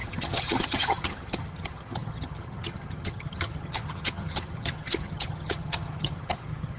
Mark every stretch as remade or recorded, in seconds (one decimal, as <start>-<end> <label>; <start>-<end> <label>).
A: 0.0-6.8 remade